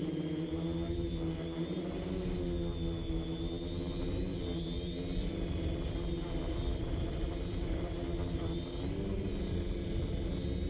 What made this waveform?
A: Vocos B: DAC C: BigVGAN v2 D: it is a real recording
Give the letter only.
D